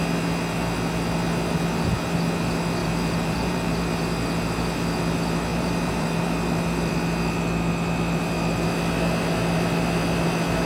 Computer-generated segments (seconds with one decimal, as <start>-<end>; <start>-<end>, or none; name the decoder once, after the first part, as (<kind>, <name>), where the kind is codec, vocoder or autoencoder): 2.8-3.8 (vocoder, BigVGAN v2); 5.5-6.3